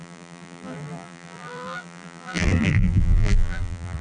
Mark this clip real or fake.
fake